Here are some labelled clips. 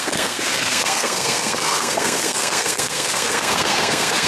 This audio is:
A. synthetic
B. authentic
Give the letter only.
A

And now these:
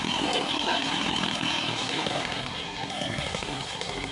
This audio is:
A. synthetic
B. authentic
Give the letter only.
A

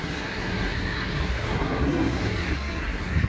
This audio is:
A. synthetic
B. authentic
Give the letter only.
A